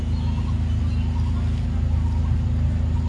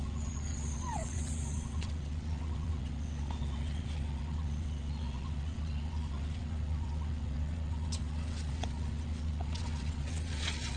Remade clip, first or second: second